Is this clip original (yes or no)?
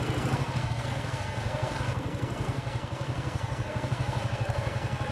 no